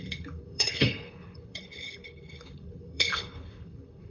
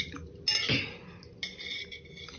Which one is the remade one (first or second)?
first